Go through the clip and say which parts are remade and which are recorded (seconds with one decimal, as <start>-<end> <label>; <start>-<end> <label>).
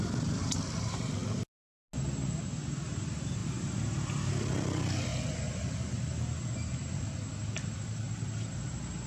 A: 0.0-1.2 remade; 1.2-2.4 recorded; 2.4-5.1 remade; 5.1-6.5 recorded; 6.5-9.1 remade